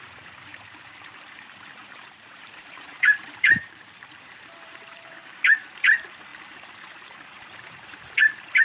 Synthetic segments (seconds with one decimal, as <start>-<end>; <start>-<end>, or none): 0.0-8.6

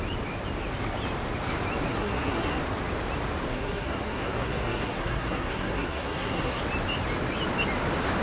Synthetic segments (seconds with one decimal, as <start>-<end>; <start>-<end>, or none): 1.9-2.6; 3.5-6.6

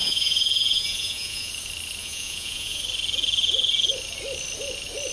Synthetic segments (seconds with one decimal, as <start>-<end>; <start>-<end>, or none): 0.0-1.5; 2.0-2.8

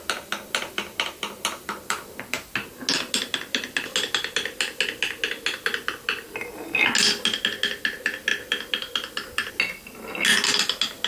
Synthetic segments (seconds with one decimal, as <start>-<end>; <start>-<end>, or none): 8.3-9.5

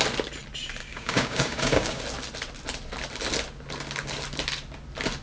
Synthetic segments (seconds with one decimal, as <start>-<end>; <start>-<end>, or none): 0.8-2.0